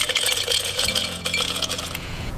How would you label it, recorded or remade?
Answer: remade